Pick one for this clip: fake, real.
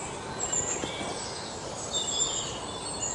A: real